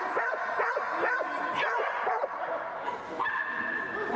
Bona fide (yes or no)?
yes